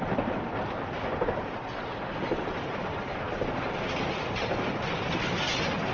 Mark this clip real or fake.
real